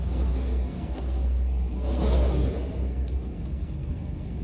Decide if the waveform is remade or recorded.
remade